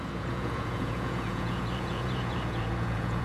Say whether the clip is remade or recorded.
remade